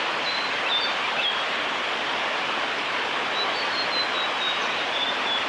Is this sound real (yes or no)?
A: yes